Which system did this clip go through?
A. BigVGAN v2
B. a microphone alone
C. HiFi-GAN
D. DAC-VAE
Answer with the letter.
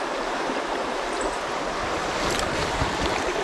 A